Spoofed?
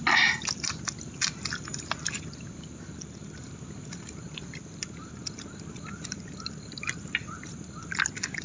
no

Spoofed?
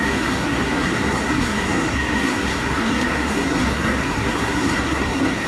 yes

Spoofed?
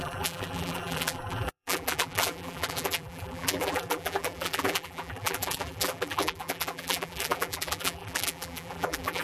yes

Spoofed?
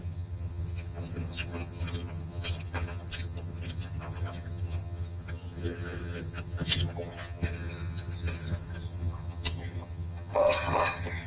yes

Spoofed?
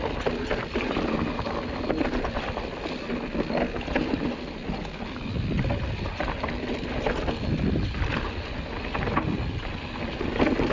no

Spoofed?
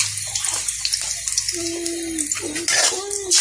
no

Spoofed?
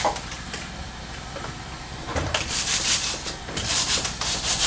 yes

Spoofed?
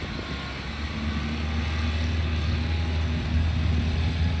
no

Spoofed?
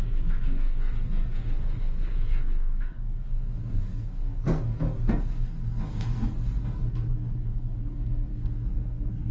yes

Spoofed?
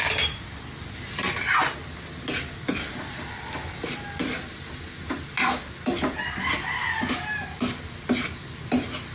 no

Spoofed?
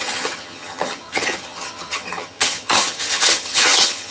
yes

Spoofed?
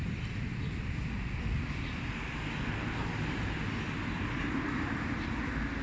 no